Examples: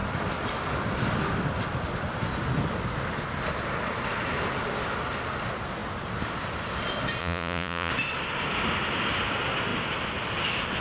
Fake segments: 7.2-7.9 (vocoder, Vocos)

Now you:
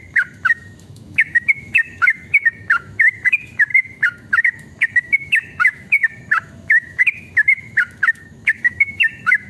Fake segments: 0.0-9.5 (autoencoder, DAC-VAE)

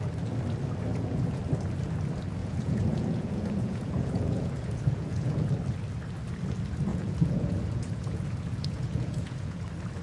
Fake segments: 0.9-1.4 (vocoder, Vocos); 2.4-5.5; 6.9-9.6

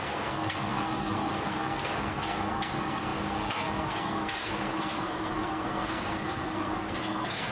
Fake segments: 0.0-7.5 (codec, SNAC)